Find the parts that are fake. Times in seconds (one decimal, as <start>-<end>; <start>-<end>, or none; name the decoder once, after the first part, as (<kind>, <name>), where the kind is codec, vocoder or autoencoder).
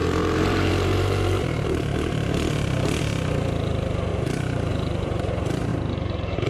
0.0-3.0 (vocoder, BigVGAN v2); 4.1-4.7; 5.7-6.5